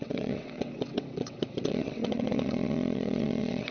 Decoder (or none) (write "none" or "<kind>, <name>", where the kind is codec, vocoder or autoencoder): vocoder, WaveNeXt